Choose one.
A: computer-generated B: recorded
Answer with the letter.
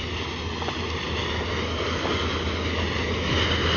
B